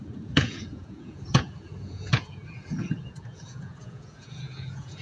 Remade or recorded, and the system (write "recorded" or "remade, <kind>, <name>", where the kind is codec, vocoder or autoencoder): remade, vocoder, Vocos